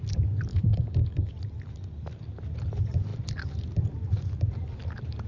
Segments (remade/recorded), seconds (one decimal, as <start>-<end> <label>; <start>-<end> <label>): 0.0-0.5 recorded; 0.5-1.3 remade; 1.3-5.3 recorded